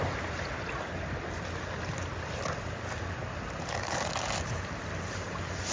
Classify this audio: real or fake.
real